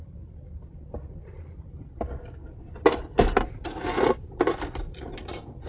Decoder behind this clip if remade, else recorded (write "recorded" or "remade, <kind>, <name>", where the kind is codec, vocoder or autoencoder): recorded